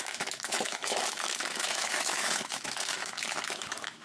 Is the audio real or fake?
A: fake